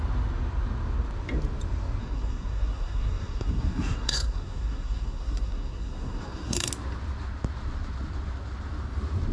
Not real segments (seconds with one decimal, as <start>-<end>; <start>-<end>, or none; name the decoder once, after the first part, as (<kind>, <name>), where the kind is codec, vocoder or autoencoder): 2.0-6.7 (codec, SNAC)